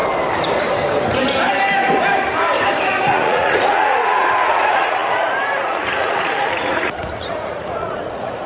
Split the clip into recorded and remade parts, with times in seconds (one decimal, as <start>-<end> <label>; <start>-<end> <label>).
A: 0.0-3.0 recorded; 3.0-8.5 remade